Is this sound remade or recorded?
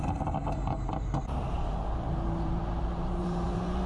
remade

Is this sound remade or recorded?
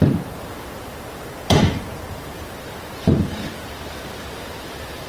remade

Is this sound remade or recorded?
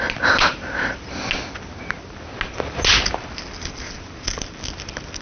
recorded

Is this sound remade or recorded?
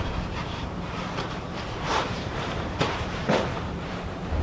remade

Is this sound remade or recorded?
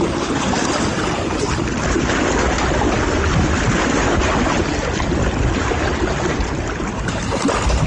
recorded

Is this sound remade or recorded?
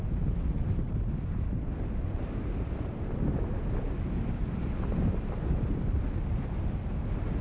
recorded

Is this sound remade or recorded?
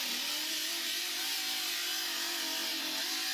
recorded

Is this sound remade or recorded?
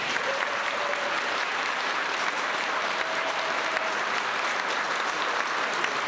remade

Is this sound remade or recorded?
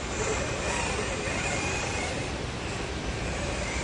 remade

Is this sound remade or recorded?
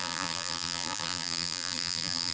remade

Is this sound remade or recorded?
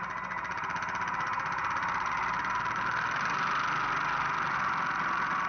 recorded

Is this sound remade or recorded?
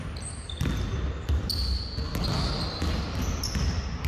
recorded